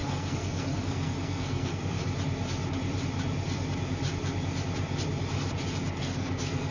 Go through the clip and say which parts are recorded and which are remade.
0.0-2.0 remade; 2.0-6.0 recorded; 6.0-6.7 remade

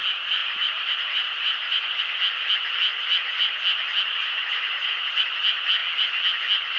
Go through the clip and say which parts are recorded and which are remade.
0.0-0.4 recorded; 0.4-2.0 remade; 2.0-4.2 recorded; 4.2-5.2 remade; 5.2-6.8 recorded

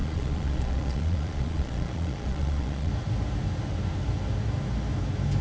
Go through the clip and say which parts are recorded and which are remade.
0.0-2.9 remade; 2.9-5.4 recorded